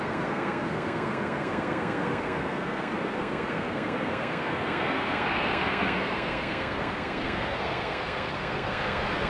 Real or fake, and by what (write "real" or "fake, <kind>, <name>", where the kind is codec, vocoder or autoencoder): fake, codec, SNAC